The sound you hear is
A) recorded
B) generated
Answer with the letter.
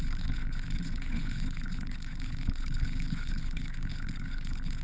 B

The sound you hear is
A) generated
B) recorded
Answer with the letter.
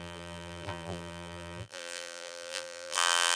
A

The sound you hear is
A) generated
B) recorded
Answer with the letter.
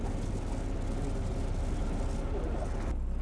B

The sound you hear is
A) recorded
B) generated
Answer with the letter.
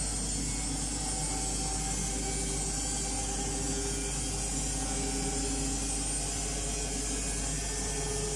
A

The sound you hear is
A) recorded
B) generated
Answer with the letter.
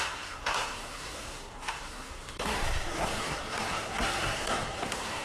B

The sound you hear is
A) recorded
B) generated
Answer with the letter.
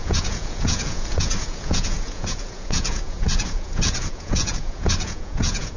B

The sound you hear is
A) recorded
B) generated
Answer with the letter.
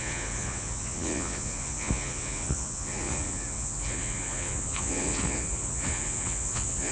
B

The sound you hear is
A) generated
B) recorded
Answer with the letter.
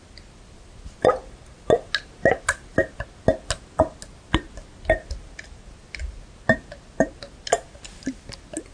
B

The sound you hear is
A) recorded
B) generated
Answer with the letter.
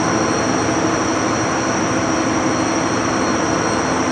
A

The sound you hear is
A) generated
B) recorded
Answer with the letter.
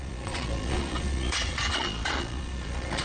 A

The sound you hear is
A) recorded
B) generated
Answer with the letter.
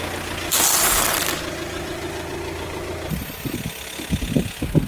A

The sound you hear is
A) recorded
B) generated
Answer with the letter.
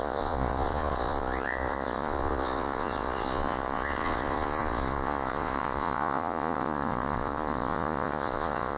B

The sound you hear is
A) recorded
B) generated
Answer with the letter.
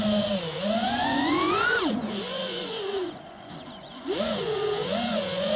B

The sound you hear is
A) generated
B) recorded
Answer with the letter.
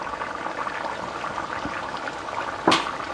A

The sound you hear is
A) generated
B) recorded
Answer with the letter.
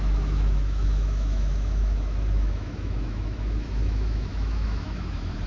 A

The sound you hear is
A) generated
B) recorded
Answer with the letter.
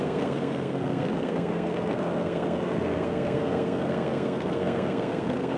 A